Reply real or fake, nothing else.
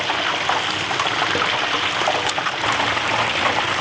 real